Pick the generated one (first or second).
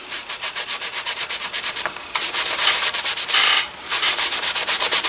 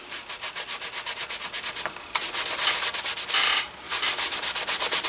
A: first